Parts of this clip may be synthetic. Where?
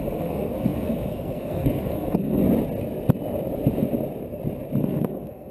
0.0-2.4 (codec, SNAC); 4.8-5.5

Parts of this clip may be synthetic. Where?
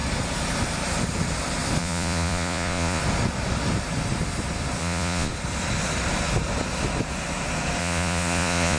1.8-3.0 (vocoder, Vocos); 4.8-5.3; 7.8-8.8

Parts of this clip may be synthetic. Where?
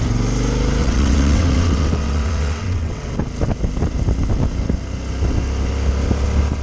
0.8-3.1 (vocoder, WaveNeXt)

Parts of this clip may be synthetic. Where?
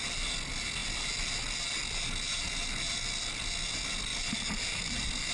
4.1-5.3 (vocoder, BigVGAN v2)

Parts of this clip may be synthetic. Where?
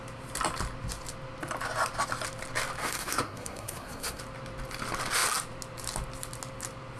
2.8-4.2 (codec, SNAC)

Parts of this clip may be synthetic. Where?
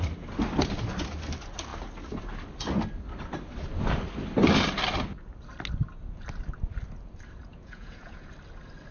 7.5-8.3 (vocoder, Vocos)